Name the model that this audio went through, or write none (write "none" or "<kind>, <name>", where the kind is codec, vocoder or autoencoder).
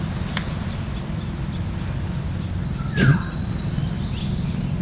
none